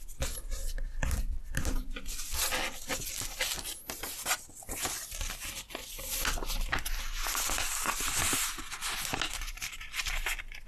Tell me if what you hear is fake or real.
real